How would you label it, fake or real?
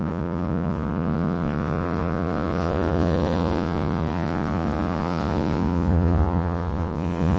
fake